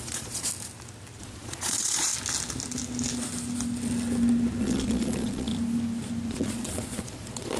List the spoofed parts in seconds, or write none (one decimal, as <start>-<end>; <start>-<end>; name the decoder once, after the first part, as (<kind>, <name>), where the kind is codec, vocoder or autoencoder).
0.0-0.5 (vocoder, Vocos); 1.2-2.1; 4.6-5.5; 6.3-7.6